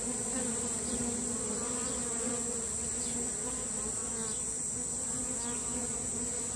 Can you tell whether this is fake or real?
real